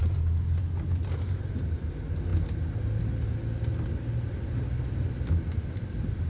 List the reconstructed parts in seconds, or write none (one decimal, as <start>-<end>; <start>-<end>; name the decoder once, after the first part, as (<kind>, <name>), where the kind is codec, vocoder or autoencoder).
none